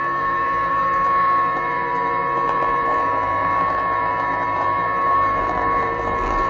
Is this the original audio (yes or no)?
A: no